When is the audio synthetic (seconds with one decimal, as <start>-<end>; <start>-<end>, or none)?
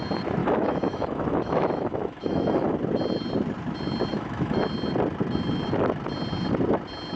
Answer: 0.4-2.7; 4.1-4.6